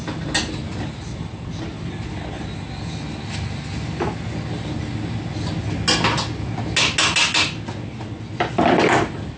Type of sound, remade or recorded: recorded